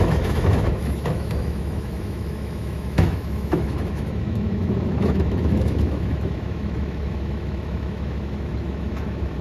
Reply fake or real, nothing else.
fake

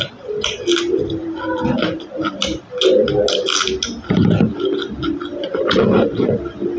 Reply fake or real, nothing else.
real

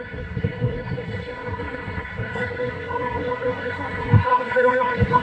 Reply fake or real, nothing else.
fake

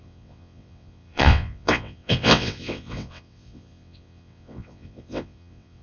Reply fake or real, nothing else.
fake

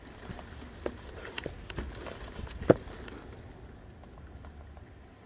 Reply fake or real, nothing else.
real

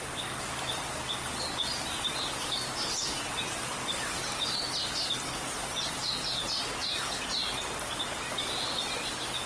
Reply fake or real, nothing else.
real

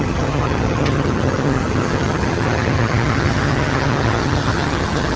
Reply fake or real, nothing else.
fake